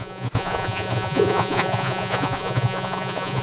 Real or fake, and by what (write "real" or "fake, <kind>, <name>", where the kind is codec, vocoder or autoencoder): fake, vocoder, Vocos